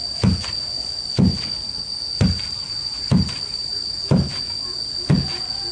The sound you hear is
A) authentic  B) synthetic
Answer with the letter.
A